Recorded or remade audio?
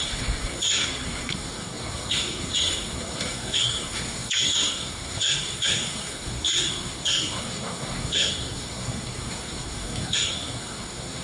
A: remade